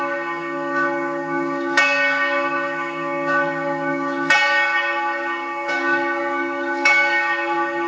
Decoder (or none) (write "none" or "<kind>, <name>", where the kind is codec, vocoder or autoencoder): codec, DAC